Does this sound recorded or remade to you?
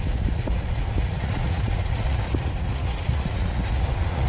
remade